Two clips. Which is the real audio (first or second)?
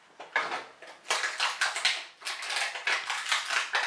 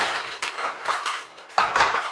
first